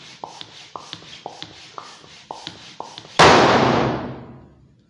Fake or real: real